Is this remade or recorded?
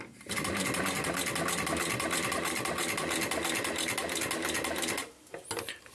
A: recorded